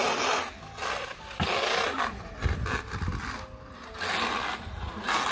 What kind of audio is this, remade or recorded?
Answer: recorded